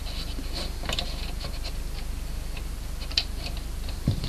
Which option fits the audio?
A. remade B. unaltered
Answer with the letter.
B